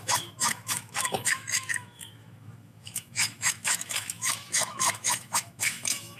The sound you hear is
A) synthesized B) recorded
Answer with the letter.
A